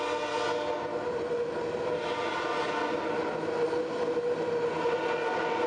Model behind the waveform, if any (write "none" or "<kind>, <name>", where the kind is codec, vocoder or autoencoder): none